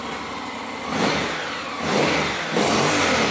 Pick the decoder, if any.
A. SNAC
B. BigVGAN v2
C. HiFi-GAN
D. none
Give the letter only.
D